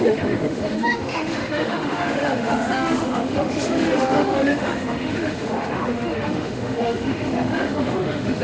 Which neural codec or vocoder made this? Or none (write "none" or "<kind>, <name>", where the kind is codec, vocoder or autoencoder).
autoencoder, DAC-VAE